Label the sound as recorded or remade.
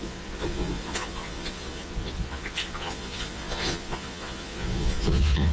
remade